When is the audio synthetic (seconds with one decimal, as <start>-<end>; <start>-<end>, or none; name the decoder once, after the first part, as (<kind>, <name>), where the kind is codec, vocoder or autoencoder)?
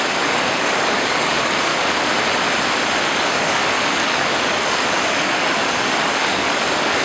0.0-1.7 (codec, DAC); 3.0-7.0